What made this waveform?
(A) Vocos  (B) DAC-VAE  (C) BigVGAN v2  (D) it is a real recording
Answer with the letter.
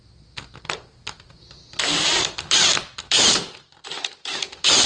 D